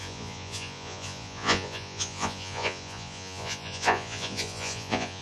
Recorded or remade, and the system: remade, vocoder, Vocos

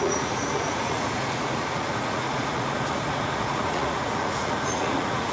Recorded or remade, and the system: remade, vocoder, Vocos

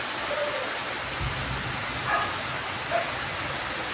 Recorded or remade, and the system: recorded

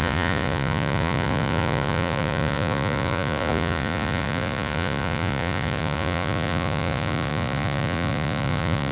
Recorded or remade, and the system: remade, vocoder, Vocos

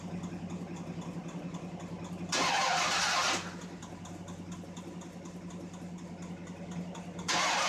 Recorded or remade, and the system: recorded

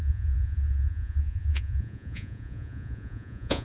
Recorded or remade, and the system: remade, vocoder, Vocos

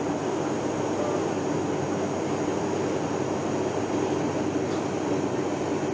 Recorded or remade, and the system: recorded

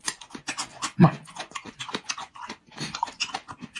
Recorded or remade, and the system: remade, vocoder, Vocos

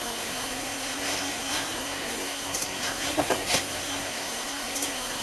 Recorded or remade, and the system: remade, codec, SNAC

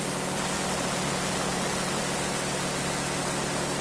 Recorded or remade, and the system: recorded